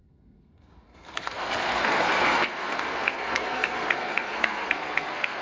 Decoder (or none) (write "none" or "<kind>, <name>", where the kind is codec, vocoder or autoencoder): codec, SNAC